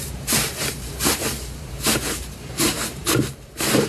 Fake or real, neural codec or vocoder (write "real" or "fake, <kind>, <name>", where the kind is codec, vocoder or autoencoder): fake, vocoder, BigVGAN v2